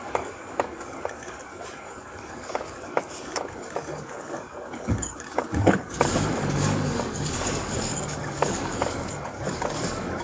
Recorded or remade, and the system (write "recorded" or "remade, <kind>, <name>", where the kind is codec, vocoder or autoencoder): remade, codec, DAC